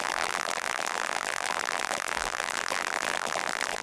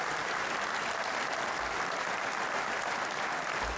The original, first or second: second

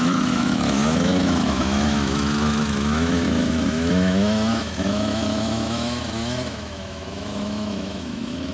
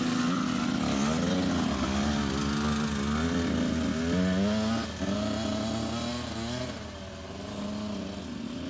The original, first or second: second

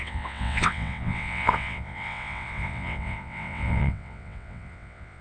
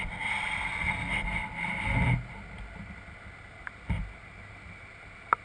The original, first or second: second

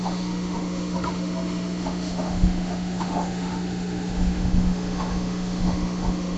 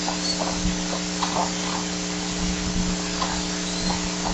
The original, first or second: second